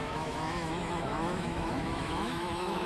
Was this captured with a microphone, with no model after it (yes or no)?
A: no